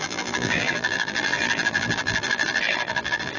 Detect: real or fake fake